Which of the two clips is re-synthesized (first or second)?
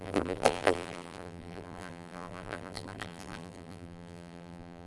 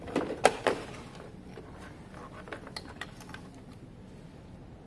first